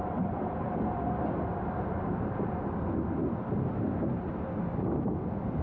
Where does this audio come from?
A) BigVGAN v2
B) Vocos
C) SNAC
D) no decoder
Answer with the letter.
D